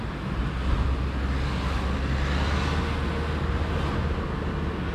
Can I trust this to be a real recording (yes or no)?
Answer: yes